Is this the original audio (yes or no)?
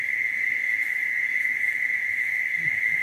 yes